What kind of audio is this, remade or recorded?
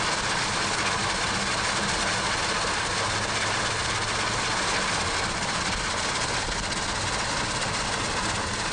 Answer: recorded